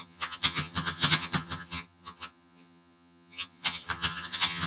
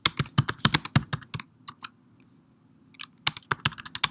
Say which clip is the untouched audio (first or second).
second